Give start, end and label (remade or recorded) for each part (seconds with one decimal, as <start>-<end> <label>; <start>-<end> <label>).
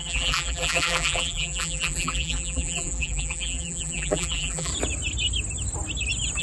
0.0-4.7 remade; 4.7-6.4 recorded